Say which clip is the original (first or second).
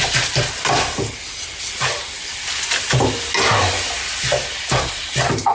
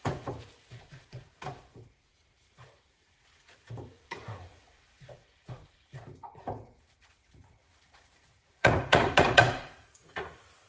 first